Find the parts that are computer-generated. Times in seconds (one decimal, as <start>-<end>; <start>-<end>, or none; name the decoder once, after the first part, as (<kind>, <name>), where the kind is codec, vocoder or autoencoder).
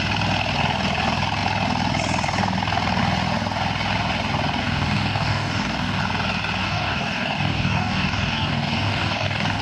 4.6-6.0 (codec, DAC); 6.6-9.6